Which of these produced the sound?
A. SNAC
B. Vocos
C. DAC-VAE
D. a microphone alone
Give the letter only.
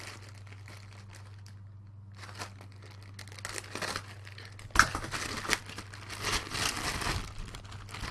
D